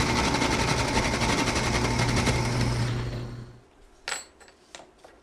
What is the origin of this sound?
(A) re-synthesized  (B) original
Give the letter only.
B